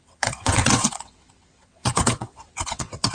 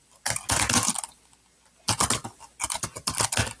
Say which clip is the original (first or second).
second